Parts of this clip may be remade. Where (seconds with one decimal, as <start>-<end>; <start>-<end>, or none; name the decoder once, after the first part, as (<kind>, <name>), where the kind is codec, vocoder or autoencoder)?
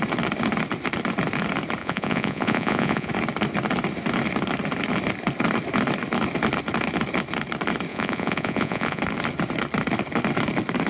1.8-3.1 (vocoder, Vocos); 7.9-9.0